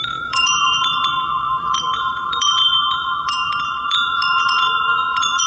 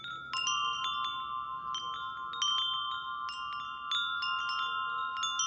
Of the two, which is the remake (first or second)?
first